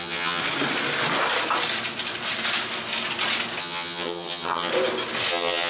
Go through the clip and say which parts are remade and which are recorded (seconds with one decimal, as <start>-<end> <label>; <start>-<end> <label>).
0.0-0.4 remade; 0.4-3.6 recorded; 3.6-4.7 remade; 4.7-5.3 recorded; 5.3-5.7 remade